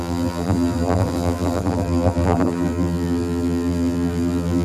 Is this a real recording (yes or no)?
no